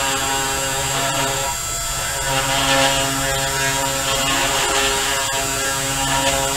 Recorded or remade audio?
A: recorded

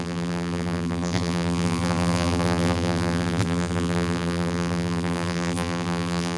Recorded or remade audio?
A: remade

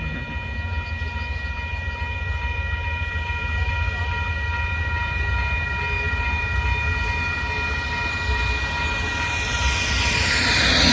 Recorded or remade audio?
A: recorded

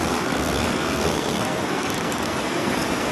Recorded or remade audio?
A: remade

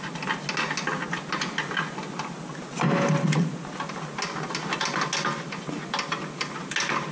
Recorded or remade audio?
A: recorded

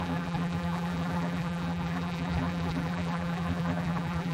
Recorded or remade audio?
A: remade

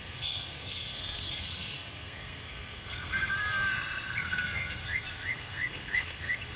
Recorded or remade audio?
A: remade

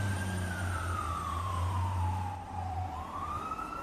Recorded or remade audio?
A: remade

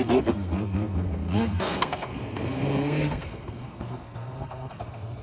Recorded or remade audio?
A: remade